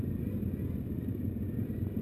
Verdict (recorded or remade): remade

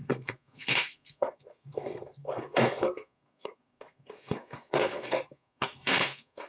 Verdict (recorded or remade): remade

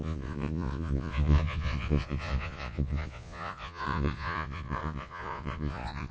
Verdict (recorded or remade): remade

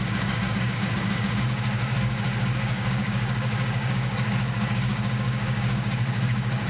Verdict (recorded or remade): remade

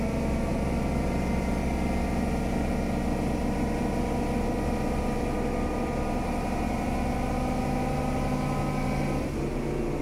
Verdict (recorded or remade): recorded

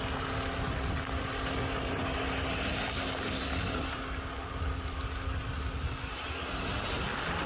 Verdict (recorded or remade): recorded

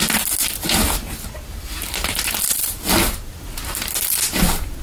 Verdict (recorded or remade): recorded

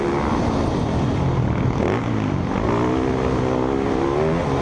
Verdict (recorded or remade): recorded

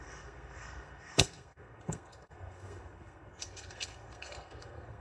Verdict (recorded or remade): remade